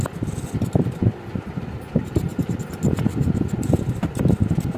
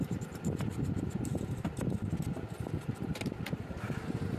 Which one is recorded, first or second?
first